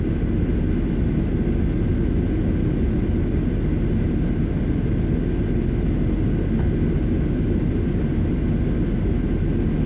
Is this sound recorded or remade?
recorded